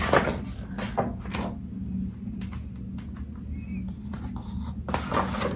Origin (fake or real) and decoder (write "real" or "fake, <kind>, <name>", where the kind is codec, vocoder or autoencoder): real